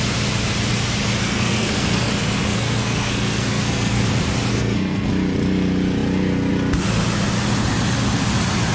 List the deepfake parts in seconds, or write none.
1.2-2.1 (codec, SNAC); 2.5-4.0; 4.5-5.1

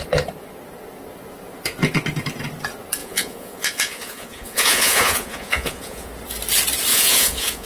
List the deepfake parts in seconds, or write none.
3.0-6.1 (vocoder, Vocos); 6.9-7.7

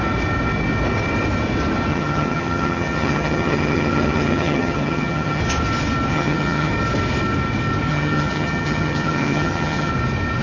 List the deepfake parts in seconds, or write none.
1.9-5.4 (vocoder, HiFi-GAN); 6.1-6.7; 7.9-9.9